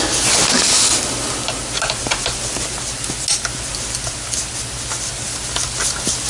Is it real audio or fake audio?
real